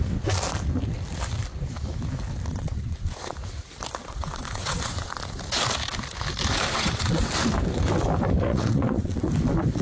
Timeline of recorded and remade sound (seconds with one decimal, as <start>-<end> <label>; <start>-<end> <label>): 0.0-2.5 recorded; 2.5-3.3 remade; 3.3-4.0 recorded; 4.0-5.1 remade; 5.1-6.7 recorded; 6.7-7.3 remade; 7.3-8.5 recorded; 8.5-9.3 remade; 9.3-9.8 recorded